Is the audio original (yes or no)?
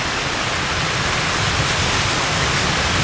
yes